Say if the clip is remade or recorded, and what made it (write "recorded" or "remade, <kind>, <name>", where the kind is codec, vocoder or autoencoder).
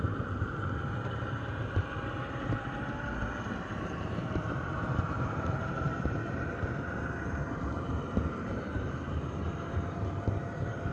remade, vocoder, BigVGAN v2